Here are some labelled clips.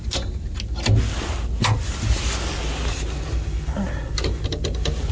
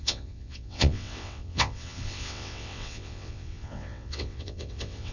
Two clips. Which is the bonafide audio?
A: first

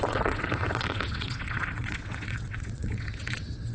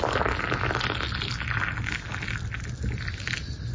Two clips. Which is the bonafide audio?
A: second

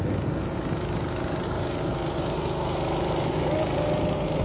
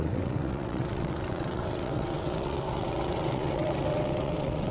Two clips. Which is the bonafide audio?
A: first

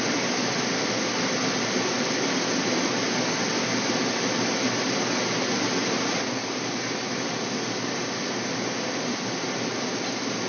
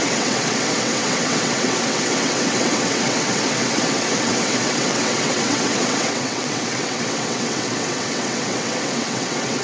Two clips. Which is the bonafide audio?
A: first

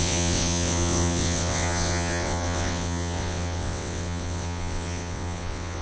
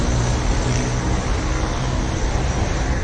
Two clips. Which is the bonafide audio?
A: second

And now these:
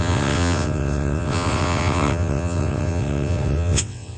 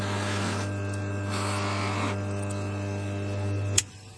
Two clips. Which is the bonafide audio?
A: second